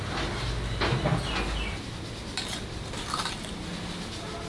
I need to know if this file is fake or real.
real